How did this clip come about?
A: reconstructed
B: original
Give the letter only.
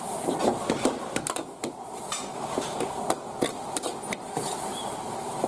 B